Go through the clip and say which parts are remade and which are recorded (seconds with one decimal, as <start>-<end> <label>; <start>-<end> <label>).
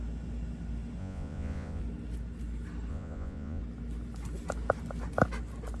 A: 0.0-1.0 recorded; 1.0-1.8 remade; 1.8-2.9 recorded; 2.9-3.6 remade; 3.6-5.8 recorded